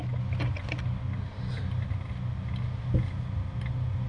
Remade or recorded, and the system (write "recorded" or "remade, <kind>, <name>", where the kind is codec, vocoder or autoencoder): recorded